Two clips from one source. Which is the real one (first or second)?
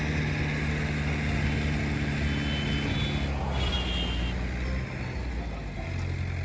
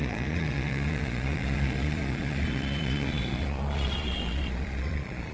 first